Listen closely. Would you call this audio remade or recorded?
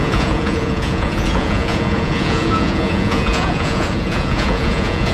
remade